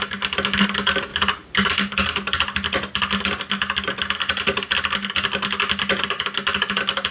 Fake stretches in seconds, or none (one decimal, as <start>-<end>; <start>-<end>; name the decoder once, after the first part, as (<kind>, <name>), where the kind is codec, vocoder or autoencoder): none